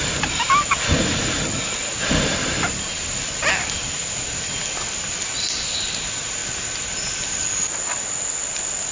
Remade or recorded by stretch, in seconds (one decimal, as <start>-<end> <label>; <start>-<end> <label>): 0.0-8.9 recorded